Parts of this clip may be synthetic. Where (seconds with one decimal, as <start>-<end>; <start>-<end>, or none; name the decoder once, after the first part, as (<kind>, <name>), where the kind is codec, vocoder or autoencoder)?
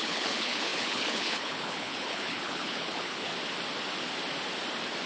0.0-3.3 (codec, HILCodec)